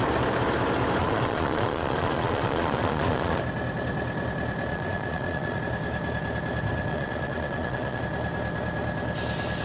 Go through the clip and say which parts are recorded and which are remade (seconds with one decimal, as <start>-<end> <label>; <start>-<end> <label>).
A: 0.0-1.0 recorded; 1.0-3.4 remade; 3.4-4.7 recorded; 4.7-5.6 remade; 5.6-6.9 recorded; 6.9-8.0 remade; 8.0-9.6 recorded